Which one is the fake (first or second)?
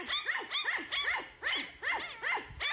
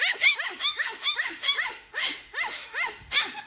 second